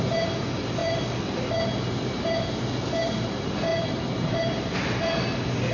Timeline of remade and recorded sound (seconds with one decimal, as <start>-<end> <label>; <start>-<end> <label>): 0.0-5.7 recorded